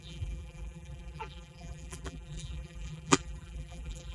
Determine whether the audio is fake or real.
fake